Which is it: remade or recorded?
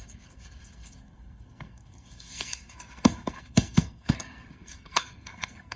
remade